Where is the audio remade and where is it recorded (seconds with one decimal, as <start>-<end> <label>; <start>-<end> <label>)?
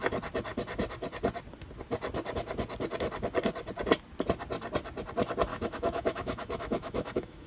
0.0-5.5 recorded; 5.5-7.5 remade